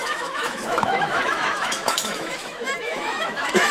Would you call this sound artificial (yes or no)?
yes